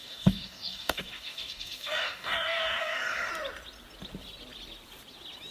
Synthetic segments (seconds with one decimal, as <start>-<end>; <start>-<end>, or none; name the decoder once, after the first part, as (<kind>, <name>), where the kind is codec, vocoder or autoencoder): 0.0-3.3 (codec, DAC)